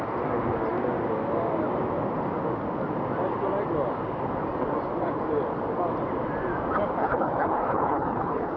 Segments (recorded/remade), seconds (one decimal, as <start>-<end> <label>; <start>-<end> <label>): 0.0-7.0 recorded; 7.0-8.6 remade